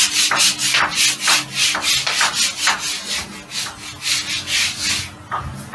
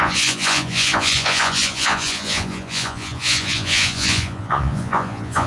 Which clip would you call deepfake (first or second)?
second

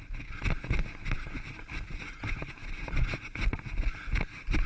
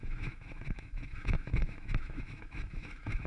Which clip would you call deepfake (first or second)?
second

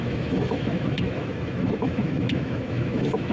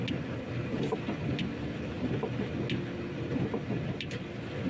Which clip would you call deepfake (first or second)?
first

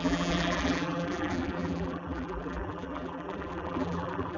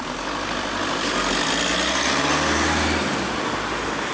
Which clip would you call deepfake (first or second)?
first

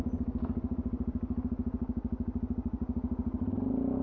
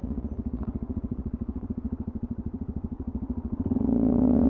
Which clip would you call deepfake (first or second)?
second